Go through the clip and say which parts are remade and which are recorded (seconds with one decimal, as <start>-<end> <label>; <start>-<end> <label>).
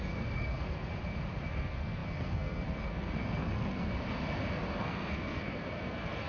0.0-0.9 remade; 0.9-1.5 recorded; 1.5-3.9 remade; 3.9-4.8 recorded; 4.8-6.3 remade